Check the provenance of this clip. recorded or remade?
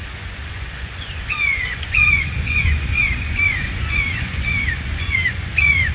remade